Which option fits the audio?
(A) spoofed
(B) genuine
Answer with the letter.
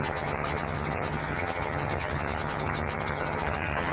A